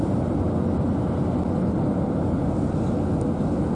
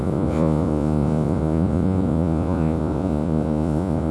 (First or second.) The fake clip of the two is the second